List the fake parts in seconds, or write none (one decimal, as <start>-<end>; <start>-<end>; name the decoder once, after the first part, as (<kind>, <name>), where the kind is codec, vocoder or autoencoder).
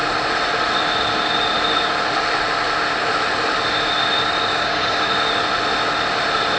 4.5-5.1 (codec, DAC)